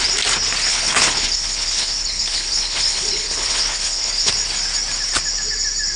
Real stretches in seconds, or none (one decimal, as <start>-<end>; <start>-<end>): 0.0-0.7; 4.3-6.0